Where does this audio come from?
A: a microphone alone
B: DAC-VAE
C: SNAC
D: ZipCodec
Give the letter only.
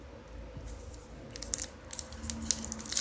A